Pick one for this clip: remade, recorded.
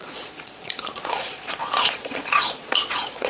remade